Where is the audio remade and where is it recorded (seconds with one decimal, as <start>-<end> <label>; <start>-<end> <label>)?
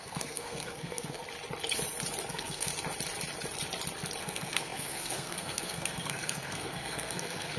0.0-1.2 remade; 1.2-2.3 recorded; 2.3-2.7 remade; 2.7-4.2 recorded; 4.2-7.6 remade